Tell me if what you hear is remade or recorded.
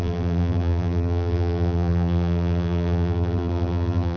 remade